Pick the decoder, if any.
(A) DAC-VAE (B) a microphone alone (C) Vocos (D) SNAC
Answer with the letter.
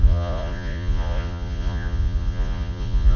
C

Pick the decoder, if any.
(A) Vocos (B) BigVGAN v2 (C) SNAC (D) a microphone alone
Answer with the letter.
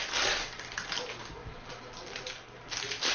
D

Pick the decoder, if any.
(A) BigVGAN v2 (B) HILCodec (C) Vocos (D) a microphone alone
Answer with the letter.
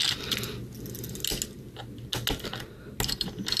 D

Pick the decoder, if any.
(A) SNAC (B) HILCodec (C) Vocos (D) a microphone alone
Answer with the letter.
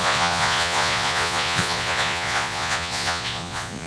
C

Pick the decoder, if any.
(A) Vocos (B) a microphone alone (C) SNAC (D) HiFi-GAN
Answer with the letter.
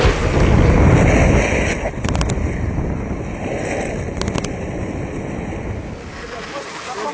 B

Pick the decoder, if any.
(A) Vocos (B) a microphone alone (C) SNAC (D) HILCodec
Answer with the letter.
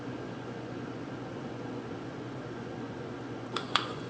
A